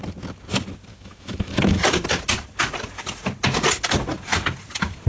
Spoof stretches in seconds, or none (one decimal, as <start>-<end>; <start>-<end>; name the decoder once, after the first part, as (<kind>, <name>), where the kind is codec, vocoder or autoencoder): 0.9-1.8 (autoencoder, DAC-VAE)